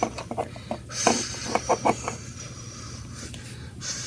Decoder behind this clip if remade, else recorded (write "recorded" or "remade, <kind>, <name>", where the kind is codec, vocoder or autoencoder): recorded